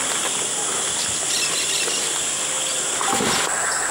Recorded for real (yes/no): yes